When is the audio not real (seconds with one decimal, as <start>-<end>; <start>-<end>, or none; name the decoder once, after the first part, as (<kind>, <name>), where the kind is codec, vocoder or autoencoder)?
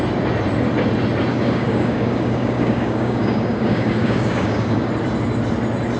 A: 1.3-4.9 (codec, DAC)